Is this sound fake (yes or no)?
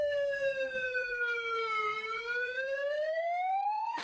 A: yes